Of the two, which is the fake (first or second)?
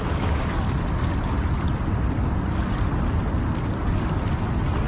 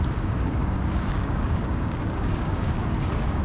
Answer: second